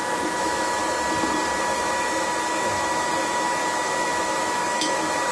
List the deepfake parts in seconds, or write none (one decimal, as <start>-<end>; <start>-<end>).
0.0-0.8; 1.6-5.3